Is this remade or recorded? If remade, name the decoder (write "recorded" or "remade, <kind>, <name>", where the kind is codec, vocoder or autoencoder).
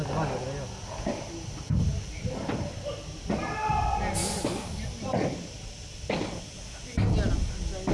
recorded